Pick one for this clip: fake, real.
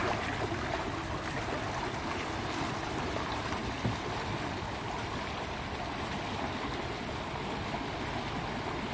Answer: real